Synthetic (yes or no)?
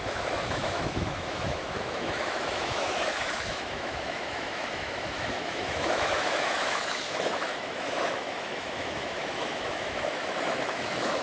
yes